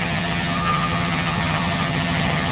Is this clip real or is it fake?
fake